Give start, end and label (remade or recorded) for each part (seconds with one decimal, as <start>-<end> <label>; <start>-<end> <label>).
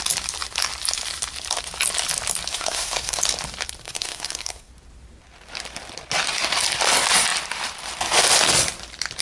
0.0-2.5 recorded; 2.5-3.2 remade; 3.2-3.8 recorded; 3.8-4.7 remade; 4.7-9.2 recorded